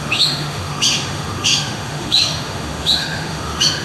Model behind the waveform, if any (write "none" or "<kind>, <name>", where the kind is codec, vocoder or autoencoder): autoencoder, DAC-VAE